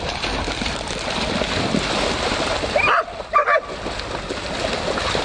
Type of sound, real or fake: real